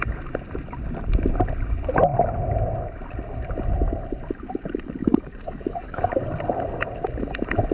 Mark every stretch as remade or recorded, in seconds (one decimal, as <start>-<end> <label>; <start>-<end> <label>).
0.0-5.0 recorded; 5.0-6.1 remade; 6.1-7.7 recorded